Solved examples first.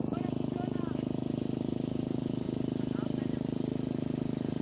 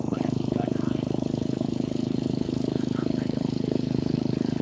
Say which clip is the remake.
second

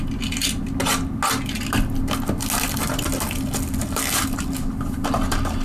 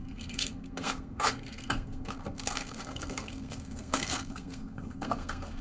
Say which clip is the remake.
second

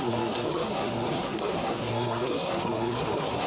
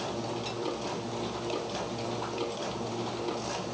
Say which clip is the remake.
first